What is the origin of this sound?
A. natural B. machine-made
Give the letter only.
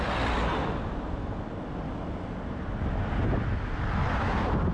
A